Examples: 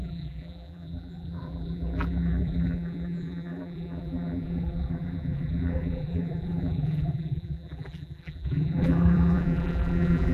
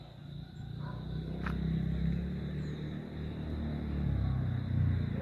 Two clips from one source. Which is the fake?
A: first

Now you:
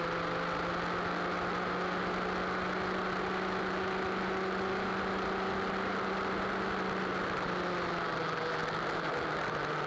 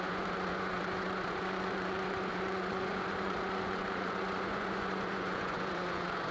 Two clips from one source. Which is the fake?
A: second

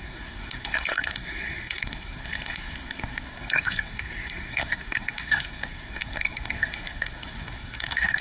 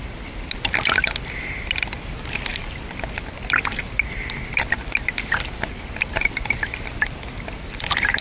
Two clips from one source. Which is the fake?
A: first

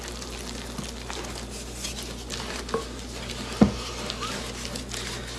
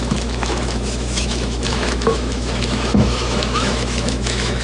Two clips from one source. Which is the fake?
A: second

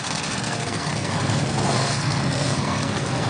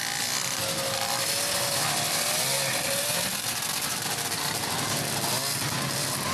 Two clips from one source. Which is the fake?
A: first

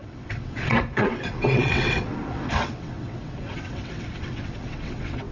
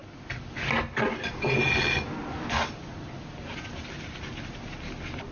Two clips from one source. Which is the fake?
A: first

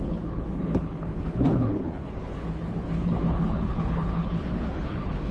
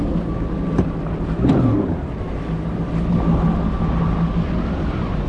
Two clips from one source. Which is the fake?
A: first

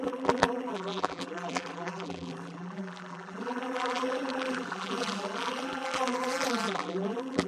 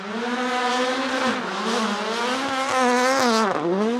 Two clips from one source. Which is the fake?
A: first